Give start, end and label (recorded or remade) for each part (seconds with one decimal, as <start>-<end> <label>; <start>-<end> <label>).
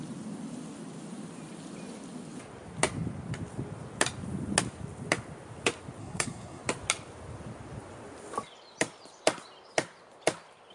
0.0-6.0 recorded; 6.0-6.6 remade; 6.6-10.7 recorded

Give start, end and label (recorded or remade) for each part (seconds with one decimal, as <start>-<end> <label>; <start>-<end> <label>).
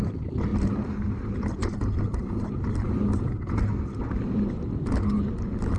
0.0-5.8 recorded